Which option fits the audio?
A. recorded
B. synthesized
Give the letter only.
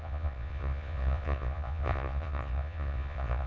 B